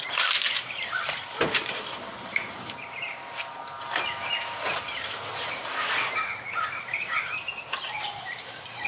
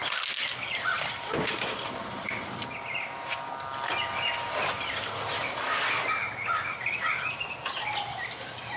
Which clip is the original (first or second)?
second